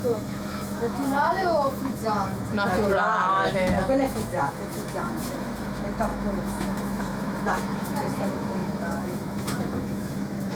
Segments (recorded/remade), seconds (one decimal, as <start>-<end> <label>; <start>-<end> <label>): 0.0-10.6 remade